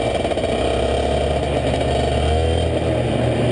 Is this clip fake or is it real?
real